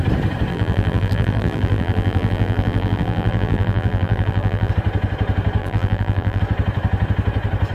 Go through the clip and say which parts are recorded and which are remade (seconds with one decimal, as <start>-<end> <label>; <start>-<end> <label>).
0.0-0.5 recorded; 0.5-4.7 remade; 4.7-5.6 recorded; 5.6-6.4 remade; 6.4-7.7 recorded